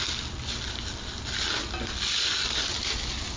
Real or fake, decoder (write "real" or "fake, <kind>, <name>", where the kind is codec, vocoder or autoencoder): real